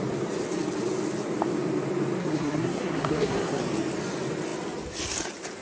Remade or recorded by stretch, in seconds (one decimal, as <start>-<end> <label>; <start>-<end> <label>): 0.0-2.2 recorded; 2.2-3.6 remade; 3.6-5.6 recorded